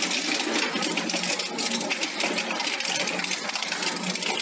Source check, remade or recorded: recorded